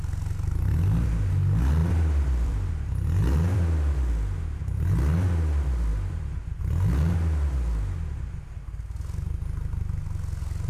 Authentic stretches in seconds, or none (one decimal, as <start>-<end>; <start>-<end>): 0.0-1.8; 2.7-3.5; 4.1-5.9; 6.6-10.7